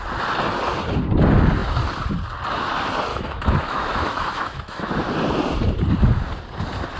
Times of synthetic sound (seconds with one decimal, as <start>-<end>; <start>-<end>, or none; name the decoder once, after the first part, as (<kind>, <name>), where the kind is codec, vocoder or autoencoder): 3.1-4.9 (autoencoder, DAC-VAE)